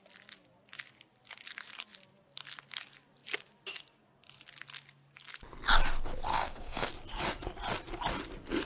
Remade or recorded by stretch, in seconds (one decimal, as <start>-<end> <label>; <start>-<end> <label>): 0.0-6.3 recorded; 6.3-6.9 remade; 6.9-8.7 recorded